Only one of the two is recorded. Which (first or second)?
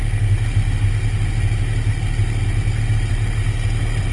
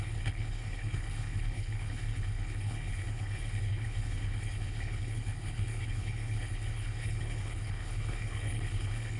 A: first